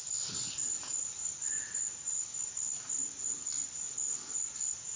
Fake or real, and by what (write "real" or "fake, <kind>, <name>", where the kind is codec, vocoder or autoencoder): real